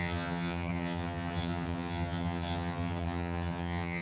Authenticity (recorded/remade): remade